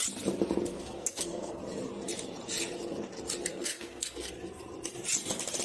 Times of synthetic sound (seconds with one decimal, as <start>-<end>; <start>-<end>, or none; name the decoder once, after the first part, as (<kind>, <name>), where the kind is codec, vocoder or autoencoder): 0.7-1.6 (codec, SNAC); 3.5-4.3